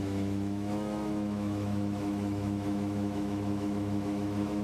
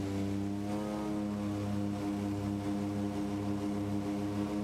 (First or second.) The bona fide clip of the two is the second